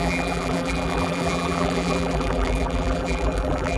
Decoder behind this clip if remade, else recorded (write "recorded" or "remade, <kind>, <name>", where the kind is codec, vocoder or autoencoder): remade, vocoder, BigVGAN v2